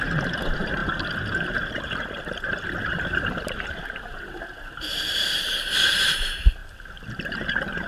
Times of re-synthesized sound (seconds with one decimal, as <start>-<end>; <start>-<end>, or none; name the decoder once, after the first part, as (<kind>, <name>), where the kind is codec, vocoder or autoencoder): 0.0-7.9 (vocoder, BigVGAN v2)